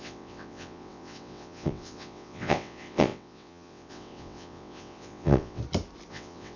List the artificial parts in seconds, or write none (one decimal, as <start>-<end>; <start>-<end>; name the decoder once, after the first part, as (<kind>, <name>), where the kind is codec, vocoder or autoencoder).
0.0-5.6 (vocoder, WaveNeXt); 6.1-6.6